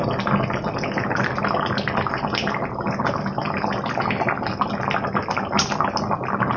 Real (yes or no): yes